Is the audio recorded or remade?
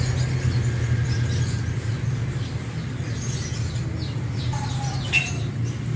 recorded